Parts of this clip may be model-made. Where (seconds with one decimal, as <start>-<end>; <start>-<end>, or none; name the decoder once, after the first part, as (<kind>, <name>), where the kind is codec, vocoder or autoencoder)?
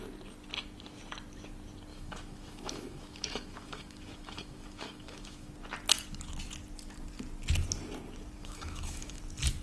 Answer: 1.9-5.5 (autoencoder, DAC-VAE); 8.4-9.2